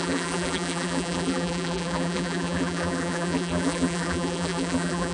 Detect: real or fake fake